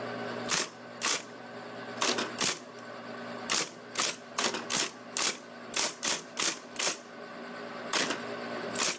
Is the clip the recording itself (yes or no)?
yes